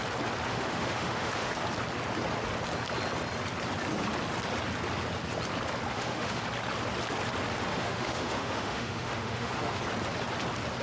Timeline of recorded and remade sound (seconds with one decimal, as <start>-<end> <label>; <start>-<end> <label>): 0.0-0.5 recorded; 0.5-1.5 remade; 1.5-5.9 recorded; 5.9-6.4 remade; 6.4-7.7 recorded; 7.7-9.8 remade; 9.8-10.8 recorded